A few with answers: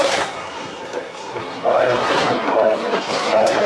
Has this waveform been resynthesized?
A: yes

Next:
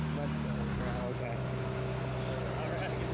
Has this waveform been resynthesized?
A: no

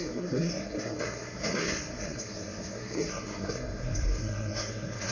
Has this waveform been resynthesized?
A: yes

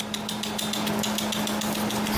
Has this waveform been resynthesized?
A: no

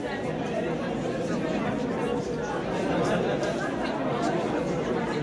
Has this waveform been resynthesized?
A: no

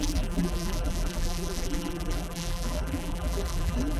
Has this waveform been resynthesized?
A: yes